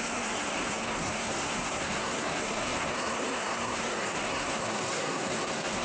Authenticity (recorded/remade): remade